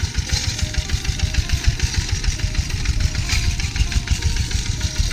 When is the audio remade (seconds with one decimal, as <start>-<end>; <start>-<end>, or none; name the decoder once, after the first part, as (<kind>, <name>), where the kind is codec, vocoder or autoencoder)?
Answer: 1.1-5.1 (vocoder, BigVGAN v2)